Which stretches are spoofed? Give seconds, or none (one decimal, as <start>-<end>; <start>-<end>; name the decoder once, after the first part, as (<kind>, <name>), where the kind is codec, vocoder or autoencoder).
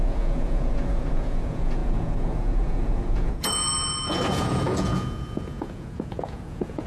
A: 0.0-6.9 (vocoder, Vocos)